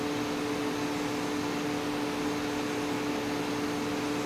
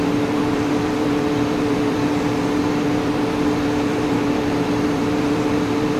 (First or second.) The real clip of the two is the first